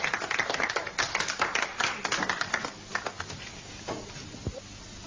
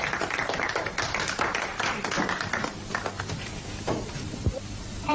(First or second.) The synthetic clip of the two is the second